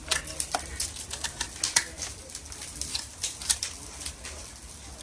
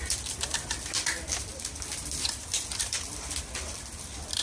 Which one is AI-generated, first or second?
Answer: second